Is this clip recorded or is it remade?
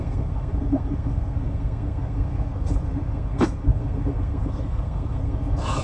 remade